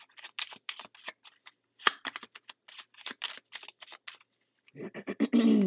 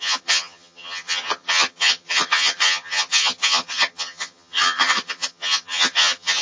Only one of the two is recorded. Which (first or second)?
first